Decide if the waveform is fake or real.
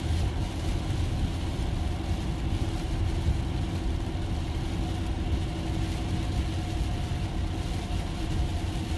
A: real